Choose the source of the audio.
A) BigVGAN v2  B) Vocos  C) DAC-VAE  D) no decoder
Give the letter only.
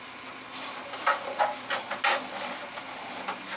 D